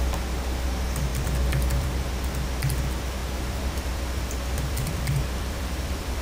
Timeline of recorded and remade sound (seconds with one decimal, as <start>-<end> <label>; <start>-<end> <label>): 0.0-1.1 recorded; 1.1-2.1 remade; 2.1-3.2 recorded; 3.2-6.2 remade